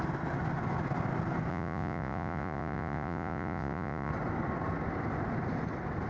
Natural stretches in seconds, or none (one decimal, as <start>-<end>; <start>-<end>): 0.0-1.5; 4.1-6.1